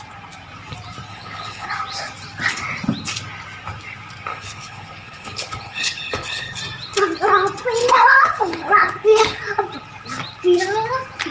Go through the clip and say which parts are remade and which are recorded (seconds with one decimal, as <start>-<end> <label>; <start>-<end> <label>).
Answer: 0.0-1.1 recorded; 1.1-1.7 remade; 1.7-4.3 recorded; 4.3-6.6 remade; 6.6-7.8 recorded; 7.8-9.4 remade; 9.4-11.3 recorded